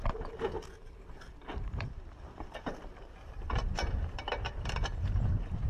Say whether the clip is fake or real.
fake